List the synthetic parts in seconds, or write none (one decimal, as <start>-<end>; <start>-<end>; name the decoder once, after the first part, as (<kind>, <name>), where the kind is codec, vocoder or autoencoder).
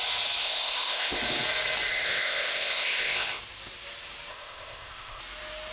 0.4-1.2 (codec, ZipCodec); 1.9-3.4; 4.3-5.2